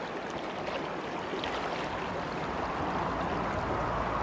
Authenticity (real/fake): real